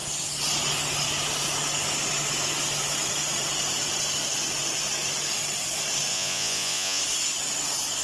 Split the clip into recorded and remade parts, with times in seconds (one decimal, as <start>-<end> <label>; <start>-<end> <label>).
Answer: 0.0-6.1 recorded; 6.1-7.0 remade; 7.0-8.0 recorded